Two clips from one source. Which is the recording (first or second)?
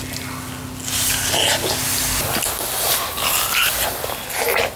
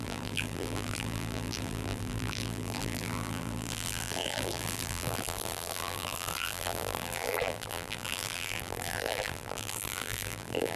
first